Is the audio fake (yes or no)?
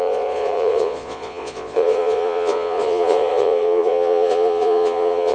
yes